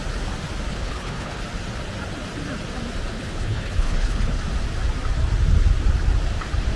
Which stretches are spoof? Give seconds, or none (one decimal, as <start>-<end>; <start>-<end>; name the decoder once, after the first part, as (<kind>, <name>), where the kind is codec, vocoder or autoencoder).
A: 0.7-1.4 (codec, HILCodec); 3.1-4.4